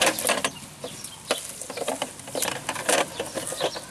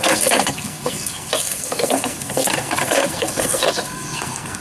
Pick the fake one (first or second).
second